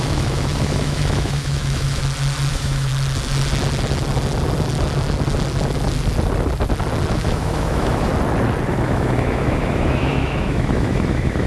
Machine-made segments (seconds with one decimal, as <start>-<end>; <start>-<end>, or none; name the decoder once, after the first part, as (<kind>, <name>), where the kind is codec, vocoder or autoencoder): 0.0-2.0 (autoencoder, DAC-VAE); 2.5-2.9; 7.1-8.1; 8.7-11.5